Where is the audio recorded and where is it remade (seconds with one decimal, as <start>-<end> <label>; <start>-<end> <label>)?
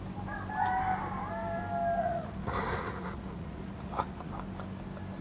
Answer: 0.0-2.0 recorded; 2.0-4.3 remade; 4.3-5.2 recorded